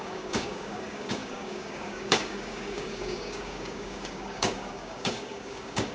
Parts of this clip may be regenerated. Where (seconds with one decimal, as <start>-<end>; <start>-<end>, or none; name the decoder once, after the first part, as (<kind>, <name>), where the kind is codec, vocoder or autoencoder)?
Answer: 0.0-5.9 (codec, DAC)